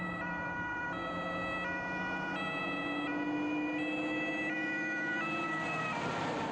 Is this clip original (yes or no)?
yes